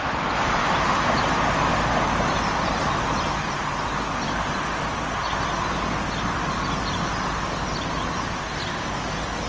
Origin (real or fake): real